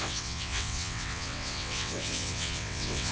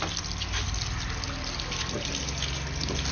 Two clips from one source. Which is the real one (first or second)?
second